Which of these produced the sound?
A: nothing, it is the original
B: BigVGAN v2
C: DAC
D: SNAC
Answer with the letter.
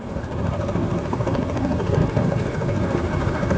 D